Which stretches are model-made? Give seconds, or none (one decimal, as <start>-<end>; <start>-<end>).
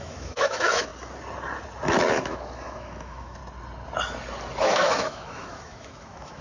0.0-0.9; 2.1-3.4; 4.6-6.4